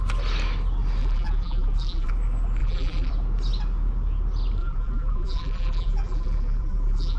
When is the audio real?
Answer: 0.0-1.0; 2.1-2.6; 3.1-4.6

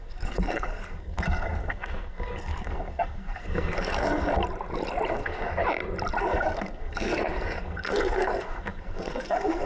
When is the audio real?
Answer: 4.4-5.1; 5.5-6.2

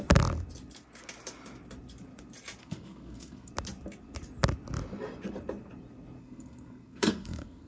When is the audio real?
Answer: 0.0-2.6; 3.5-6.2